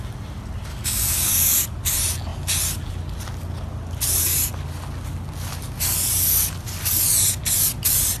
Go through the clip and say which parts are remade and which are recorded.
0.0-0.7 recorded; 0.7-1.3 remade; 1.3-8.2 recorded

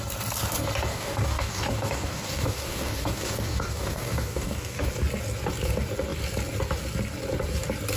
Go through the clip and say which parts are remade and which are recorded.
0.0-0.9 recorded; 0.9-4.9 remade; 4.9-8.0 recorded

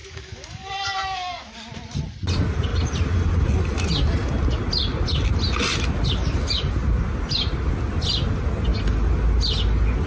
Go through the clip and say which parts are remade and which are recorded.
0.0-1.5 remade; 1.5-10.1 recorded